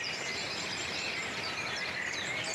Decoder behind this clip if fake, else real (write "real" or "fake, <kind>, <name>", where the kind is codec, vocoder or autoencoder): real